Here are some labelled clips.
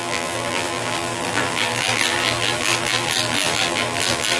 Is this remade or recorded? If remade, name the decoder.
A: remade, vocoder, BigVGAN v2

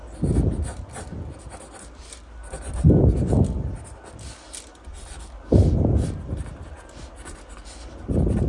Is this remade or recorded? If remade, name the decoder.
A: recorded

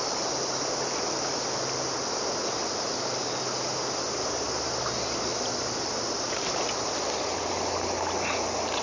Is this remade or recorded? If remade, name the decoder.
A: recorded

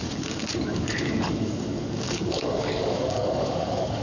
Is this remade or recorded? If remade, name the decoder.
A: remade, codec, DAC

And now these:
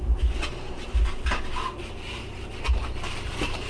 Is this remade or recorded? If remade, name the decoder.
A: recorded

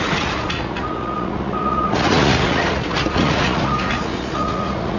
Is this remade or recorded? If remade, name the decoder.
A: remade, vocoder, Vocos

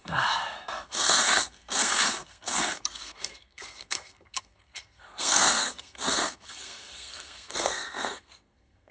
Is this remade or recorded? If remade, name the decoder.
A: remade, codec, SNAC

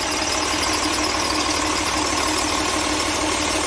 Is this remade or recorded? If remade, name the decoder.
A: recorded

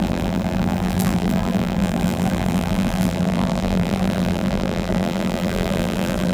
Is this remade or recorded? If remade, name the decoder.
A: remade, vocoder, BigVGAN v2